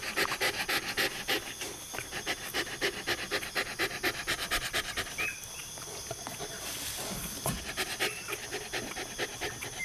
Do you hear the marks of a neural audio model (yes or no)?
no